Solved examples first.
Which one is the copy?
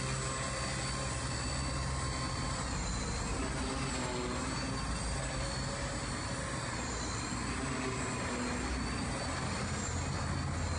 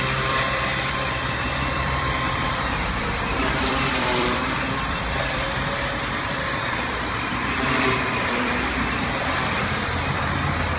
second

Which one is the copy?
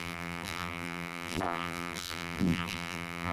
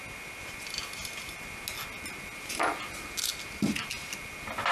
first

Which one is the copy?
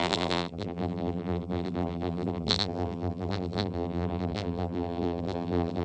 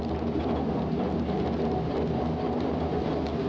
first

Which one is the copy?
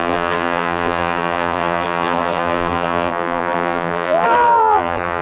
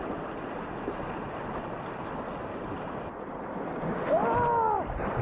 first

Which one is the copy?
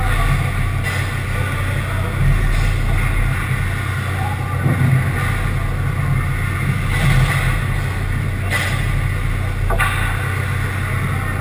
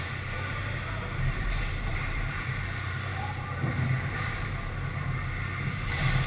second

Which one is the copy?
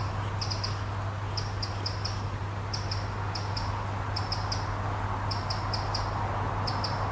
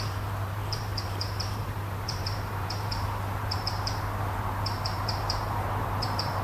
second